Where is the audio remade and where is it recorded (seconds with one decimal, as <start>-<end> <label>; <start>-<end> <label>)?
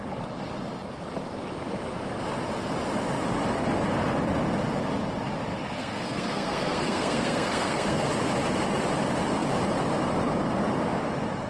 0.0-5.8 recorded; 5.8-8.1 remade; 8.1-11.5 recorded